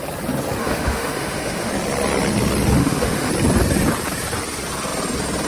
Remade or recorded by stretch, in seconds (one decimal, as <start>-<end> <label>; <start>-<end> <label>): 0.0-0.6 recorded; 0.6-1.7 remade; 1.7-2.8 recorded; 2.8-3.3 remade; 3.3-5.5 recorded